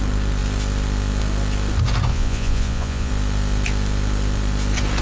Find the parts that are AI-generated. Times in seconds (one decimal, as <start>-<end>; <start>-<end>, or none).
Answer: 2.1-3.1